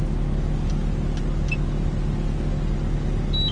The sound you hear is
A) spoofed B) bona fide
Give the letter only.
B